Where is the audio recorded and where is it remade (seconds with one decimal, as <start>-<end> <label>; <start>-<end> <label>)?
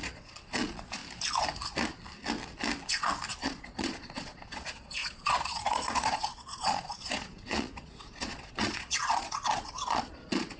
0.0-1.0 remade; 1.0-3.3 recorded; 3.3-10.6 remade